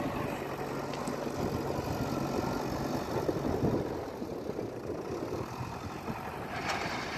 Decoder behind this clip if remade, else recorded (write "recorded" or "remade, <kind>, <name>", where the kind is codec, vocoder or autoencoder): recorded